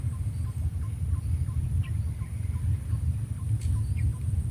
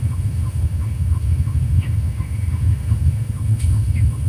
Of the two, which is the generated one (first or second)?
second